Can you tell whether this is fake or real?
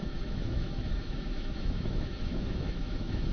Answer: fake